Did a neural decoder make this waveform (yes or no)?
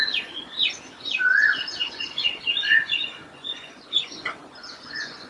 yes